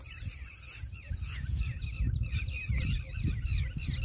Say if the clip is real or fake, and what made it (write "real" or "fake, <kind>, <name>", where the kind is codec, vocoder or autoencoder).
real